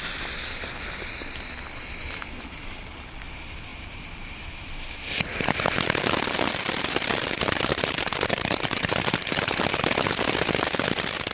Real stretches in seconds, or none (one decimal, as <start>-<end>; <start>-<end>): 0.0-3.7; 4.9-7.7; 9.6-11.3